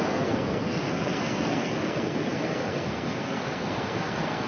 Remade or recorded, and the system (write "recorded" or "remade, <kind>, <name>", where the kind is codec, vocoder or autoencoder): remade, codec, SNAC